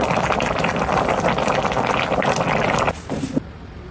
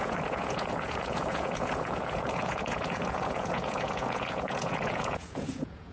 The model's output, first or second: second